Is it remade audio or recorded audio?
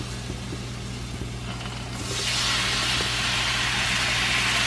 recorded